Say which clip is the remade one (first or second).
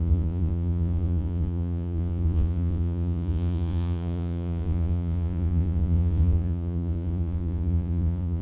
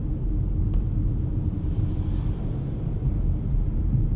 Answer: first